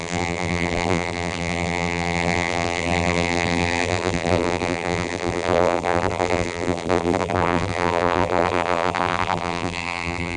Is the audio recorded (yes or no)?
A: no